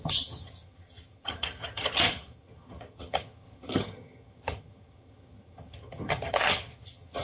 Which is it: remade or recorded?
remade